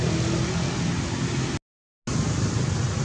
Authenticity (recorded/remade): recorded